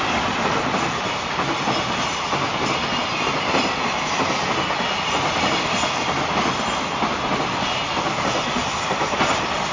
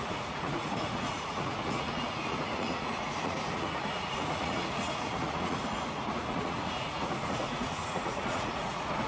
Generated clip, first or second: second